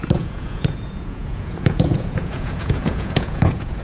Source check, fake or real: fake